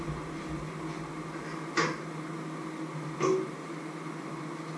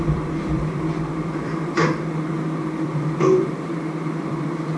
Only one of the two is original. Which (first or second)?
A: first